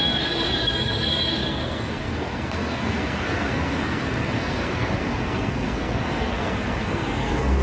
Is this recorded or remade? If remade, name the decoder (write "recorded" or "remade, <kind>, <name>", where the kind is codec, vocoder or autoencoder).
remade, codec, SNAC